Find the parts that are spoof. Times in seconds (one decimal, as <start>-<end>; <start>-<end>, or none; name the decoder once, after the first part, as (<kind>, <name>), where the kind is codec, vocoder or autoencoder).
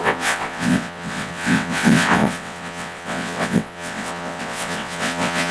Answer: 0.0-5.5 (vocoder, WaveNeXt)